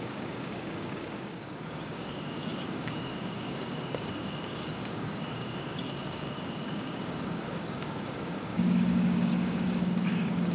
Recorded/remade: remade